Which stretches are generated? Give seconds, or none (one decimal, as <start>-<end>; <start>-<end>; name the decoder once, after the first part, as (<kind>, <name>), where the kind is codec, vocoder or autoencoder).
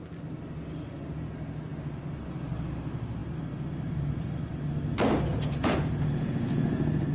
5.3-7.1 (vocoder, Vocos)